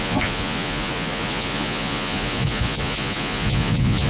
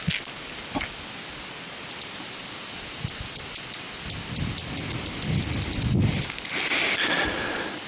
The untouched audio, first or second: second